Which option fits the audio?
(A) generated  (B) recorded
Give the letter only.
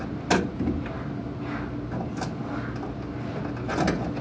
B